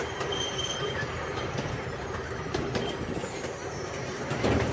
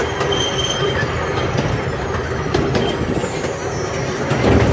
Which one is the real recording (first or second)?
second